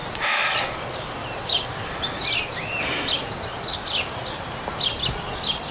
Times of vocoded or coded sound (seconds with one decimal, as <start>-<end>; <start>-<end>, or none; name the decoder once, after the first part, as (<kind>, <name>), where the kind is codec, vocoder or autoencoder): none